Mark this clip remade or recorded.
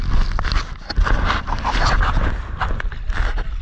recorded